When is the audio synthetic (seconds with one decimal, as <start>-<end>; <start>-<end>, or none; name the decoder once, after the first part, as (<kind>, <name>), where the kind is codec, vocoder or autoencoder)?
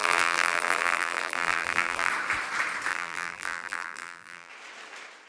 0.0-2.1 (vocoder, BigVGAN v2); 2.9-4.5